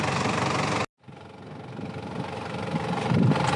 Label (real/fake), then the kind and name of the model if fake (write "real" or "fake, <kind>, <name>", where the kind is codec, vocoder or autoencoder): real